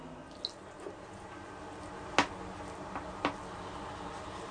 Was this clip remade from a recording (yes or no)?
no